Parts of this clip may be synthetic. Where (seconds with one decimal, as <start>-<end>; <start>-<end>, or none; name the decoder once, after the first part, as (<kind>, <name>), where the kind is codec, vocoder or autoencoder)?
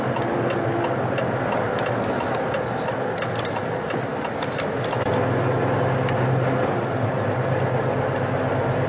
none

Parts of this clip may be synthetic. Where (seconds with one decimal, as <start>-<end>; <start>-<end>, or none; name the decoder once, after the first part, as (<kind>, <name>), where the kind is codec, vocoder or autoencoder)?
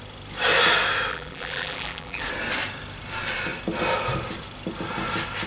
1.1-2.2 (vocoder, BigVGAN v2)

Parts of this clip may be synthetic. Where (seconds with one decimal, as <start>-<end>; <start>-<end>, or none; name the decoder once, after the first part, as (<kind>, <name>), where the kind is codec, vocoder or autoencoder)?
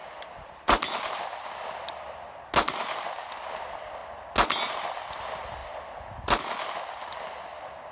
0.0-2.4 (vocoder, BigVGAN v2); 5.6-6.4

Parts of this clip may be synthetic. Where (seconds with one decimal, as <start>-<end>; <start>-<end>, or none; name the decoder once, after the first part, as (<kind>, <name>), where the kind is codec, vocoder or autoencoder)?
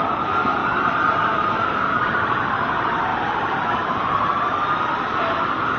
0.6-1.2 (vocoder, BigVGAN v2); 3.1-5.2